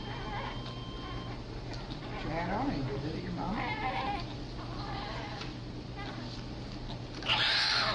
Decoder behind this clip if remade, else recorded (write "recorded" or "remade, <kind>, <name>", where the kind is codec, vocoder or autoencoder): recorded